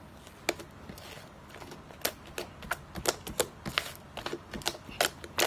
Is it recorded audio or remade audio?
recorded